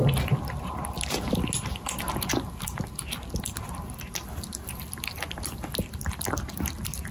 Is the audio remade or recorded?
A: recorded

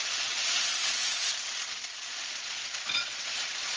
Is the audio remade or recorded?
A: remade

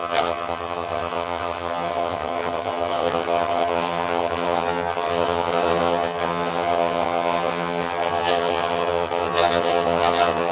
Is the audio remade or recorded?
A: remade